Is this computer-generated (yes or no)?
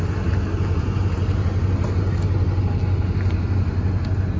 no